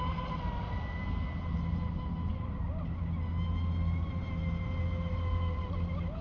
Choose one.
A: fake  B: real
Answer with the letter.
B